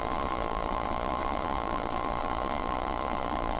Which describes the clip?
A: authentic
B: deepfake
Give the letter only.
B